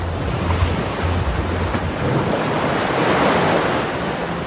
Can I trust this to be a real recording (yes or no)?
yes